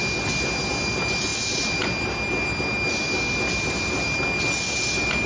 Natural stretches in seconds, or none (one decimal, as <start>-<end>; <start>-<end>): 0.0-5.3